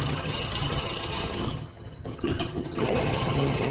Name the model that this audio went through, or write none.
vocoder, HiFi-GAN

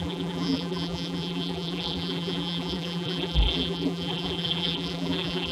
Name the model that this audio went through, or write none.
vocoder, BigVGAN v2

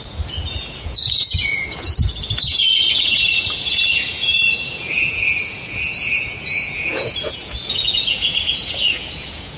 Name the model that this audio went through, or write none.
vocoder, Vocos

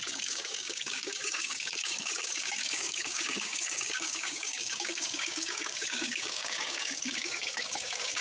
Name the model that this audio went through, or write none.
codec, DAC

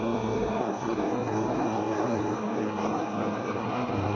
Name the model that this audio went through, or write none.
codec, SNAC